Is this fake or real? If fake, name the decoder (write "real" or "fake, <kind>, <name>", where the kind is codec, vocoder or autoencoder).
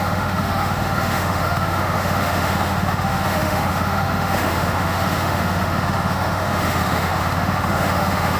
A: fake, autoencoder, DAC-VAE